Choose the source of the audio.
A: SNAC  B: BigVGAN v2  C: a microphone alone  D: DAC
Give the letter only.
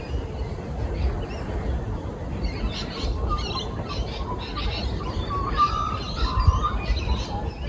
C